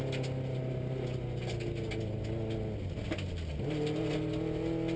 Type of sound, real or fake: real